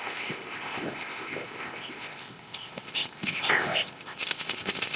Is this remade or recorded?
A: remade